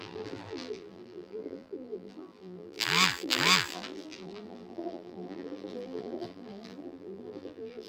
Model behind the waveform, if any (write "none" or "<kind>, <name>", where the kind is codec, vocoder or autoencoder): vocoder, BigVGAN v2